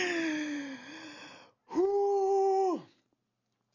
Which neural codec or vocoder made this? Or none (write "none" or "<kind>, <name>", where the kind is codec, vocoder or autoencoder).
none